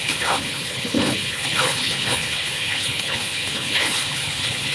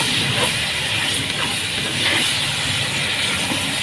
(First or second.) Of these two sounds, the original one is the second